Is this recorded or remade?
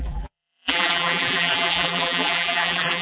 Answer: remade